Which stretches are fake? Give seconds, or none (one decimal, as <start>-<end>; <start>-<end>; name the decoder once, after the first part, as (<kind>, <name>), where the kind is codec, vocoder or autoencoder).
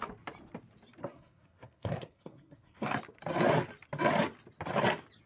1.0-3.0 (codec, SNAC)